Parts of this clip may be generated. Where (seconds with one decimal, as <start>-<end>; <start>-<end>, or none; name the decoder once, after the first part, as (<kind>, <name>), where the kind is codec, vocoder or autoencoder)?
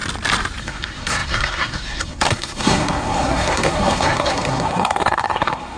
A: 0.6-5.8 (codec, SNAC)